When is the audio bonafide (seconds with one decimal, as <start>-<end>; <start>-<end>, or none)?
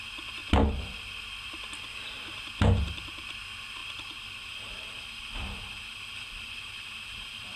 0.4-1.0